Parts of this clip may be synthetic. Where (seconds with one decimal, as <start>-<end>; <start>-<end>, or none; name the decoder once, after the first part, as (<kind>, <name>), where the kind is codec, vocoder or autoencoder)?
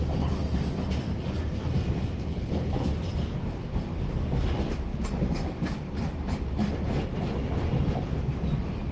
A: 2.3-2.9 (codec, HILCodec)